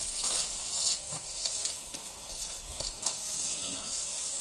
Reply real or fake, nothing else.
fake